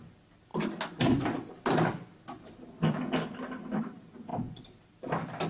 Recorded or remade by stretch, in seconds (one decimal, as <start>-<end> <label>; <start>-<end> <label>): 0.0-5.5 recorded